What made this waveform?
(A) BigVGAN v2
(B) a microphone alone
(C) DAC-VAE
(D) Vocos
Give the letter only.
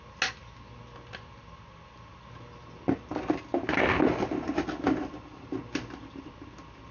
B